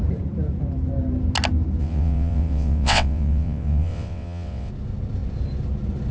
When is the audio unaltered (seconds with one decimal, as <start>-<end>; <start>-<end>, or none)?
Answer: 0.0-1.8; 4.7-6.1